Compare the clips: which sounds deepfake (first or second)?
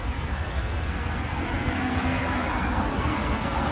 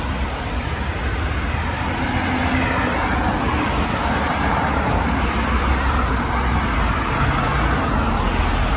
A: first